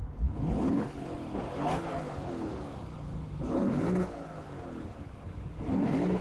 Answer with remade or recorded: remade